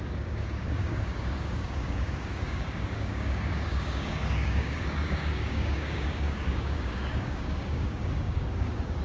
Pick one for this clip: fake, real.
fake